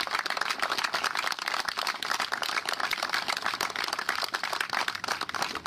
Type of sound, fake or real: real